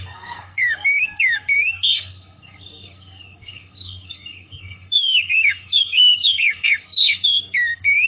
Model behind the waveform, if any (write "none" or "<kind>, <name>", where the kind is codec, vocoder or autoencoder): codec, SNAC